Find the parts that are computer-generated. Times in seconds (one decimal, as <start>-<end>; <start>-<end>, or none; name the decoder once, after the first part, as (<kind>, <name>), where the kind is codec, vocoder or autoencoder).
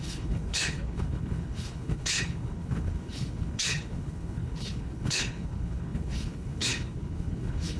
0.0-7.8 (codec, HILCodec)